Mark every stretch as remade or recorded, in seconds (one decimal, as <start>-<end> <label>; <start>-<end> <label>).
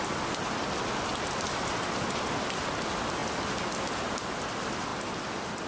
0.0-5.7 recorded